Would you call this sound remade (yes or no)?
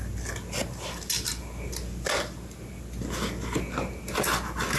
no